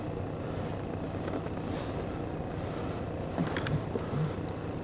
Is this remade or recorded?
recorded